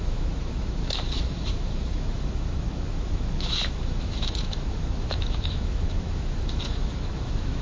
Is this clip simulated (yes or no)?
yes